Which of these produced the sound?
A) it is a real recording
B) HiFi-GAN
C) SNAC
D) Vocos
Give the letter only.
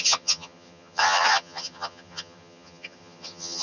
B